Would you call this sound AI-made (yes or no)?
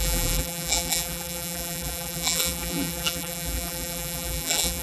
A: yes